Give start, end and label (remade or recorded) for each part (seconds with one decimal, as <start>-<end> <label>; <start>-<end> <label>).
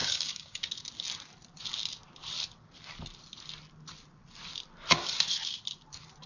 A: 0.0-0.7 remade; 0.7-6.3 recorded